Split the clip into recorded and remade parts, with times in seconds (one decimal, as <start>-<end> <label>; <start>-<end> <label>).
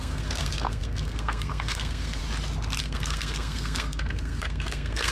0.0-2.2 remade; 2.2-2.8 recorded; 2.8-5.1 remade